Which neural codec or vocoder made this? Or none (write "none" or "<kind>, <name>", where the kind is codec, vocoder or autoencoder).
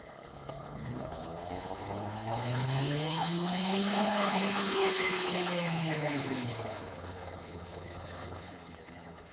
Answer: codec, HILCodec